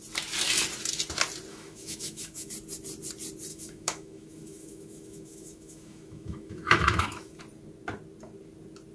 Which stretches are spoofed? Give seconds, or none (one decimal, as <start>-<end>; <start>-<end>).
1.5-2.5; 3.5-7.4